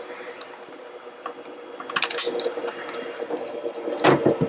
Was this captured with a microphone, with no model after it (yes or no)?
yes